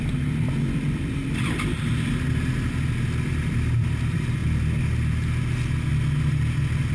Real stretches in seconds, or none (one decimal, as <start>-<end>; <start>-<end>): 1.9-3.3; 4.4-6.9

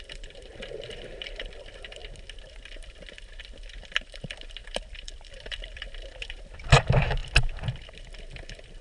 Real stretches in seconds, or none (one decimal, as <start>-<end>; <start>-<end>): 0.5-1.2; 2.0-3.4; 7.2-8.2

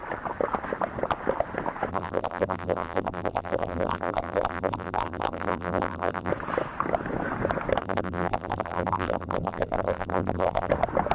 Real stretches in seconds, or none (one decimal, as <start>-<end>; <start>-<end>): 0.0-1.9; 6.3-7.8; 10.7-11.1

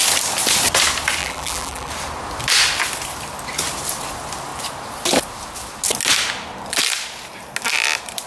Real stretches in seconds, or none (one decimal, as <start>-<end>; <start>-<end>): 0.0-1.2; 1.9-8.3